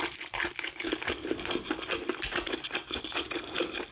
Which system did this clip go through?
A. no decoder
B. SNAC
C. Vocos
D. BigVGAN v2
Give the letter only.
A